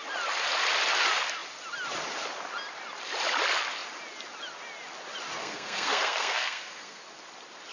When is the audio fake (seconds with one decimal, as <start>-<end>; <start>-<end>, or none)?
5.4-7.0